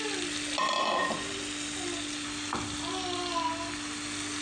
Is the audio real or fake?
real